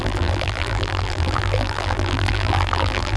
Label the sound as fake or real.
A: fake